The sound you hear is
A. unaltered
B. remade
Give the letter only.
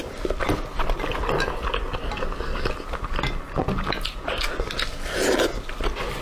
A